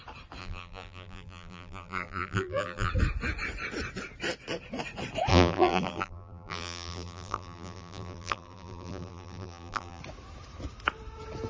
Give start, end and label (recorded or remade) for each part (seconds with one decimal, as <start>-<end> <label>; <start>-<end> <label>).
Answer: 0.0-0.4 recorded; 0.4-2.9 remade; 2.9-5.3 recorded; 5.3-10.0 remade; 10.0-11.5 recorded